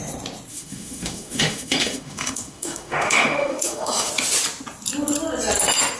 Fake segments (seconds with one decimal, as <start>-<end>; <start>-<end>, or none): 0.5-4.1